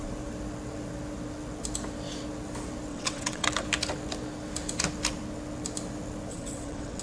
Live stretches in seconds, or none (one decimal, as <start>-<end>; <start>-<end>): 0.0-2.9; 3.5-6.3